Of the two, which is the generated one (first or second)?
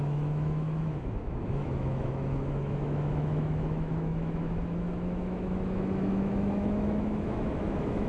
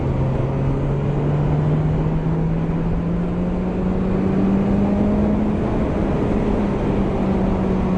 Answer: first